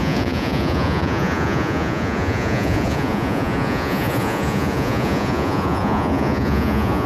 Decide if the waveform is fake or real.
fake